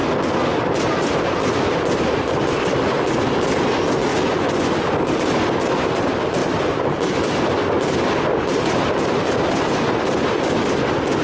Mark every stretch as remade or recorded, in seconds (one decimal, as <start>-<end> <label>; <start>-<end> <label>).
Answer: 0.0-4.1 recorded; 4.1-4.7 remade; 4.7-11.2 recorded